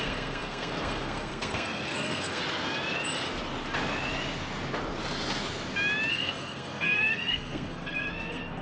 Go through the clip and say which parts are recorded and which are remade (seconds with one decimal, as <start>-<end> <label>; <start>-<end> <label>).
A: 0.0-2.4 remade; 2.4-6.1 recorded; 6.1-8.6 remade